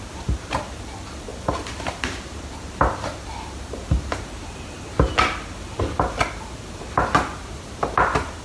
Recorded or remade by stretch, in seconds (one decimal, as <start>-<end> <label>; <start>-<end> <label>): 0.0-8.4 recorded